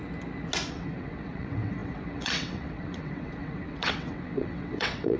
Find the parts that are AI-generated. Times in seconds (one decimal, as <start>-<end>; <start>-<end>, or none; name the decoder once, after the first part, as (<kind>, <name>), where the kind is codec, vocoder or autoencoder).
0.7-5.2 (vocoder, WaveNeXt)